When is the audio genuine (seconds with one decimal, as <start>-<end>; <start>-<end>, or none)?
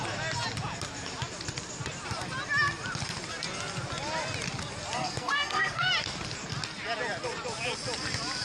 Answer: 0.0-5.0; 5.9-8.4